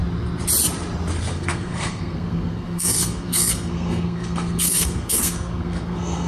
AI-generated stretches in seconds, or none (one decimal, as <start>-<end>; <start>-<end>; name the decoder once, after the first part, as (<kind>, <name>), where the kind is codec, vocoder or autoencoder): 1.2-6.3 (codec, SNAC)